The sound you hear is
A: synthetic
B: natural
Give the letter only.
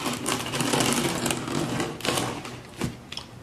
B